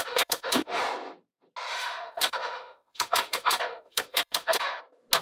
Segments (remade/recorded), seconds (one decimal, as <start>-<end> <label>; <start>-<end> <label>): 0.0-0.8 remade; 0.8-1.7 recorded; 1.7-4.8 remade; 4.8-5.2 recorded